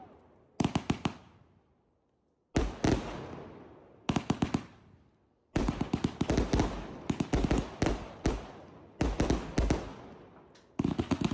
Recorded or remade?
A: recorded